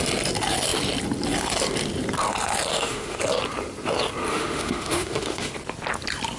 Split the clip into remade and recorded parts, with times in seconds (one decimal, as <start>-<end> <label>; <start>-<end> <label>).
0.0-2.7 recorded; 2.7-3.2 remade; 3.2-4.3 recorded; 4.3-5.5 remade; 5.5-6.4 recorded